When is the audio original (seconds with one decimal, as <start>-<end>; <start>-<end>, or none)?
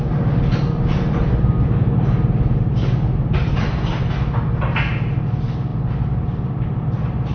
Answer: 0.0-7.3